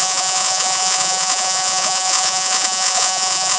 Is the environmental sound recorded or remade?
remade